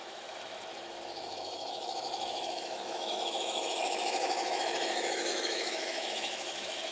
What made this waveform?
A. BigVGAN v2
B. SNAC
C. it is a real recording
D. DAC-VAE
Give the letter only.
D